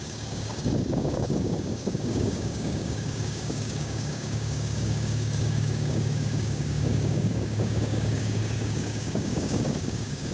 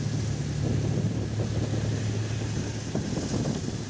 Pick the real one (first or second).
second